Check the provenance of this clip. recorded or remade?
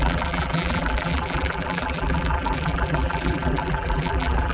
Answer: remade